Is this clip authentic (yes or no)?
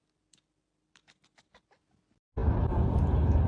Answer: yes